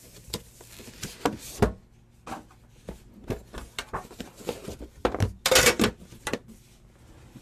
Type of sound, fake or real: real